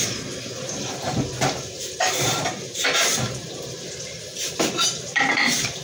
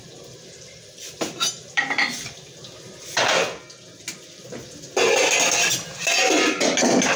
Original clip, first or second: second